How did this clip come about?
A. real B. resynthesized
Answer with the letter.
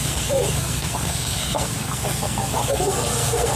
B